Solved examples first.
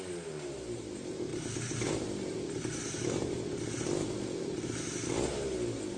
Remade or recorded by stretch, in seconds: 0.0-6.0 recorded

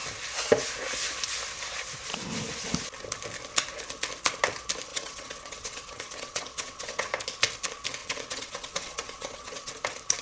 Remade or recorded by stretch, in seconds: 0.0-4.9 recorded; 4.9-7.1 remade; 7.1-8.0 recorded; 8.0-9.7 remade; 9.7-10.2 recorded

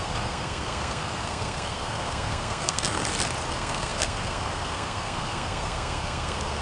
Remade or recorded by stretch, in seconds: 0.0-3.0 remade; 3.0-3.5 recorded; 3.5-6.6 remade

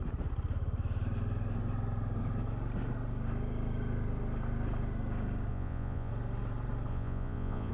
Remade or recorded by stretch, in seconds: 0.0-5.5 recorded; 5.5-6.1 remade; 6.1-6.9 recorded; 6.9-7.7 remade

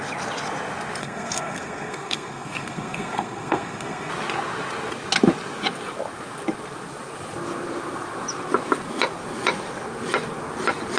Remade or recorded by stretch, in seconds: 0.0-1.0 recorded; 1.0-4.1 remade; 4.1-11.0 recorded